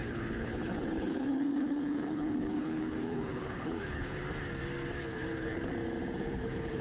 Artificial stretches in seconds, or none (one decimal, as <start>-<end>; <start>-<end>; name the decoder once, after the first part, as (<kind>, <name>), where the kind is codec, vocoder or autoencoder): 0.0-4.2 (codec, HILCodec); 5.0-5.7; 6.2-6.8